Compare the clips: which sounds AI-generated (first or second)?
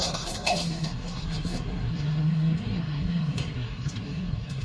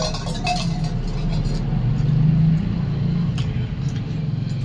first